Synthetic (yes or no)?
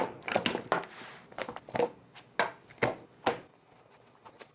no